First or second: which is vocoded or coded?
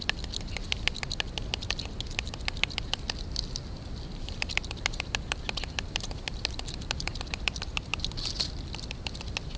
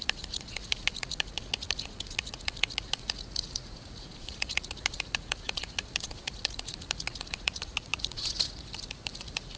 second